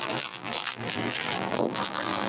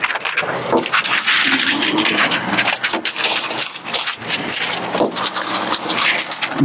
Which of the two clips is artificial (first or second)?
first